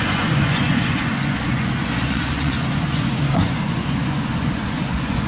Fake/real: fake